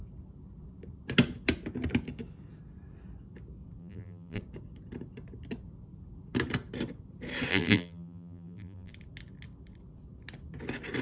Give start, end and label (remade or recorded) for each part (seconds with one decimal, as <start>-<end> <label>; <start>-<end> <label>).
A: 0.0-3.8 recorded; 3.8-4.4 remade; 4.4-7.5 recorded; 7.5-8.9 remade; 8.9-11.0 recorded